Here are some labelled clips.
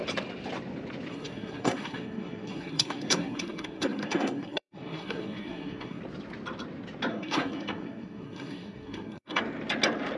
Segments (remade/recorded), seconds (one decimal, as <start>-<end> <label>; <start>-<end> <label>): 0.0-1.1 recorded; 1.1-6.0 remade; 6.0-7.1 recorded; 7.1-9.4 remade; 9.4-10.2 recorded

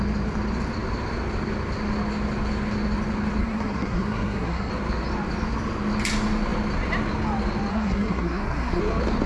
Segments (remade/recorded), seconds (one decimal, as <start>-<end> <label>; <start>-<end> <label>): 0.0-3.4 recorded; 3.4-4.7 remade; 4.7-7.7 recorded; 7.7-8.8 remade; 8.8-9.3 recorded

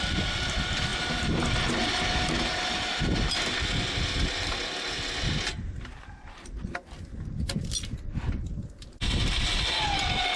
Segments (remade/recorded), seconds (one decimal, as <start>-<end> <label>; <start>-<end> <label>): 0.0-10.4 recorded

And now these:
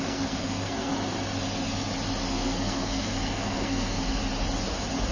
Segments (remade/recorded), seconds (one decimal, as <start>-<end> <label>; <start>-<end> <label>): 0.0-0.9 remade; 0.9-2.3 recorded; 2.3-4.2 remade; 4.2-5.1 recorded